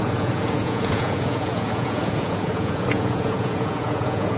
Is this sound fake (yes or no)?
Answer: yes